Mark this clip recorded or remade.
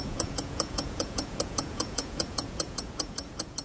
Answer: remade